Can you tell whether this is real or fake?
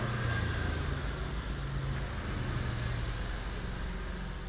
real